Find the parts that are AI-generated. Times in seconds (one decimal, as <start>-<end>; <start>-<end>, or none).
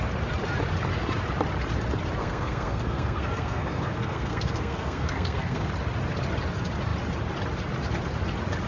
2.2-5.7